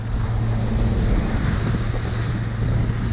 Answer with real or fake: real